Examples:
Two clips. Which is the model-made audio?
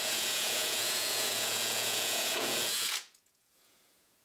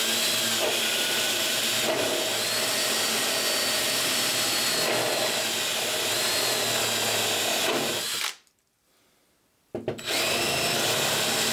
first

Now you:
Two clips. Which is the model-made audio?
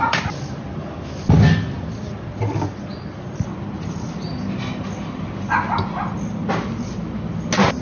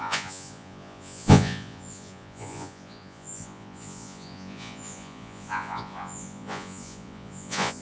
second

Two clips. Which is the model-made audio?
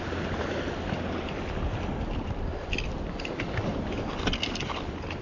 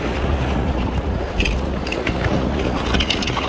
second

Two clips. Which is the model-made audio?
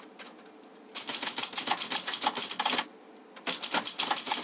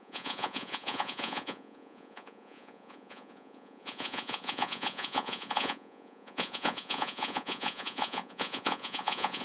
second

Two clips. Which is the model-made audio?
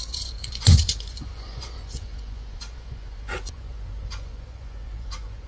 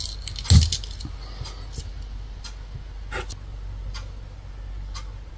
first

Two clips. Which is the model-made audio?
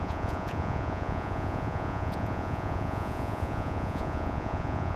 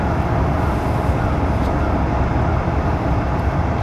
first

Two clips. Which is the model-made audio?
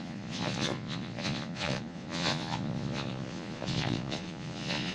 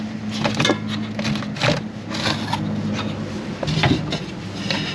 first